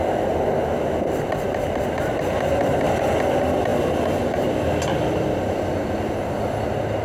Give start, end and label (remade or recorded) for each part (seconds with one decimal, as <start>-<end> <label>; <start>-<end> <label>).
0.0-7.0 recorded